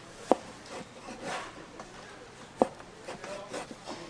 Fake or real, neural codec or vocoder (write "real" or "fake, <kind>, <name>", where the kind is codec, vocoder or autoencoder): real